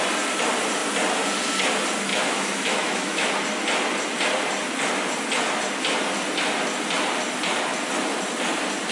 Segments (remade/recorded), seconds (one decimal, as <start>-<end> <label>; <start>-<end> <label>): 0.0-2.1 recorded; 2.1-3.3 remade; 3.3-8.9 recorded